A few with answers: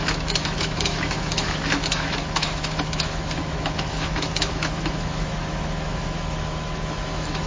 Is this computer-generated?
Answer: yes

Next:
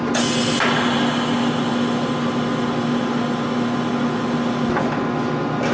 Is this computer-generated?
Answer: no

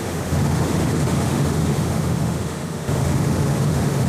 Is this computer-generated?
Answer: yes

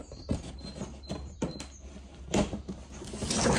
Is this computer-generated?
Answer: no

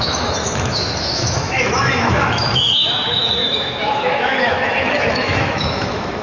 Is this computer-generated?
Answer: yes